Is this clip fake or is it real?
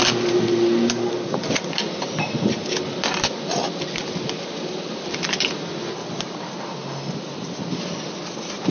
real